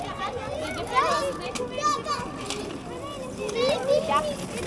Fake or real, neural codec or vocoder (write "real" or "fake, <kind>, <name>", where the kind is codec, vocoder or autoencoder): real